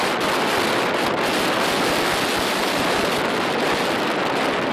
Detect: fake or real real